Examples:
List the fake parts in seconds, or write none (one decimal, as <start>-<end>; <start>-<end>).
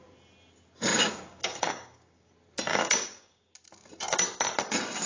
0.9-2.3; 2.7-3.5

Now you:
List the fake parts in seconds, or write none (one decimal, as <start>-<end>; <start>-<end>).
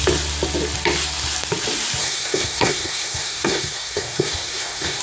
2.0-5.0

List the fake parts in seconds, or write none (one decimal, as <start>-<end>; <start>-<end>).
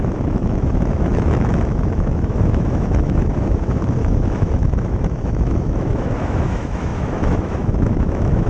0.0-8.5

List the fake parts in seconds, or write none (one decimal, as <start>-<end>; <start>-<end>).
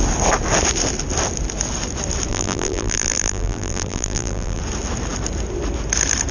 2.3-4.6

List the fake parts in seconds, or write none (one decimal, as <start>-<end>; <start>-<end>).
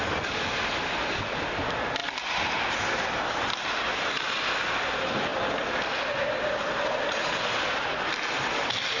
none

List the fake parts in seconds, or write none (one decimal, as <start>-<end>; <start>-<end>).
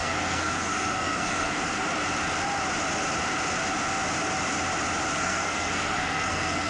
0.0-1.8; 5.2-6.7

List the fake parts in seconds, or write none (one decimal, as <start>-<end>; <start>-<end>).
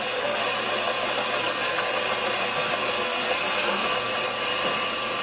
0.0-0.4; 1.4-1.9; 2.9-4.1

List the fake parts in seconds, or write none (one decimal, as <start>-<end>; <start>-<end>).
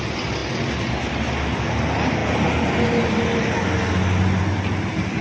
none